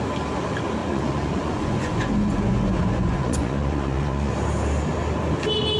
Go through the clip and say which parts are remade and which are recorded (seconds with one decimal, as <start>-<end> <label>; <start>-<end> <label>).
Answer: 0.0-0.8 recorded; 0.8-4.3 remade; 4.3-5.8 recorded